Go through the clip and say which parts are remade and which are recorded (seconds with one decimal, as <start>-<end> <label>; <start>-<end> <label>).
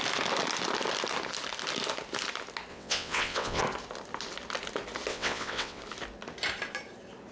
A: 0.0-2.7 recorded; 2.7-3.6 remade; 3.6-5.1 recorded; 5.1-5.8 remade; 5.8-7.3 recorded